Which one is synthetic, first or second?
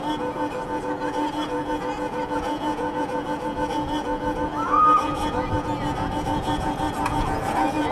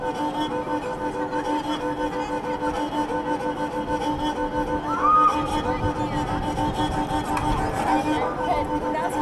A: first